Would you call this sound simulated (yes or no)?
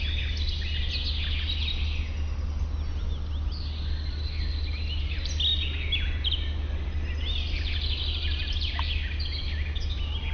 no